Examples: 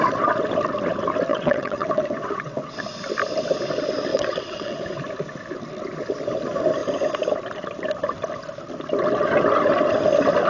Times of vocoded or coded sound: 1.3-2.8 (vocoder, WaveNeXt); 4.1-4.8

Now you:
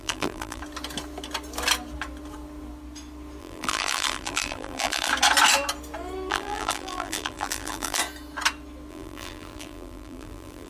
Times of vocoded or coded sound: 0.0-0.6 (vocoder, BigVGAN v2); 3.4-5.1; 6.3-8.0; 8.9-10.7

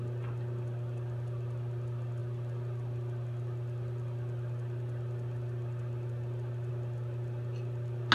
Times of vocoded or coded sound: none

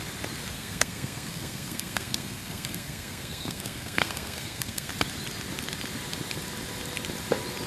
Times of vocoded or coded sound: 0.5-4.9 (codec, SNAC)

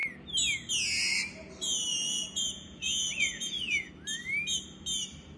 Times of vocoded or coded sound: 1.9-3.9 (vocoder, Vocos)

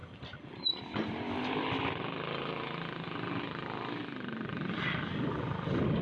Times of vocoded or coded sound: 0.0-1.7 (vocoder, BigVGAN v2); 4.0-4.5